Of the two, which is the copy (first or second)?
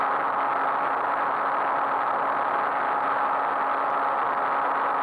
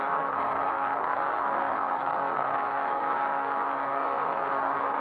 second